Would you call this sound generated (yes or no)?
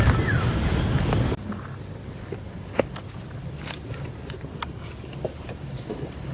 no